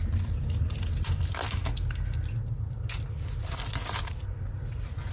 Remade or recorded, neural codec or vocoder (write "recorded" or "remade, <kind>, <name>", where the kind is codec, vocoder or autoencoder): recorded